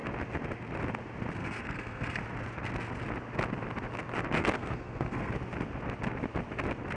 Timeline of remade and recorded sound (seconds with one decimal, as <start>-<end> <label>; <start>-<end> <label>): 0.0-1.4 recorded; 1.4-2.2 remade; 2.2-4.4 recorded; 4.4-5.3 remade; 5.3-7.0 recorded